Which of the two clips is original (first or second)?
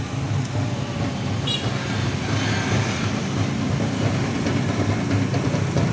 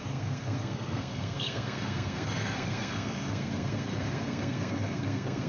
first